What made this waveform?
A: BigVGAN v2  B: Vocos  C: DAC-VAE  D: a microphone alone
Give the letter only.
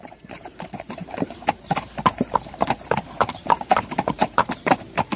A